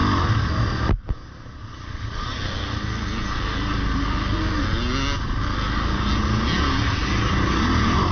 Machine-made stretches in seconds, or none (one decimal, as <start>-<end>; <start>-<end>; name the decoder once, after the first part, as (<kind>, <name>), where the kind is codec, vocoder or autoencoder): none